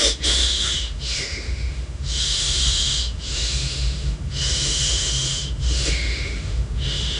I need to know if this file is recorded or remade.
remade